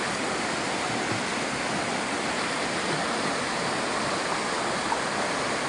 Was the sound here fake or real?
real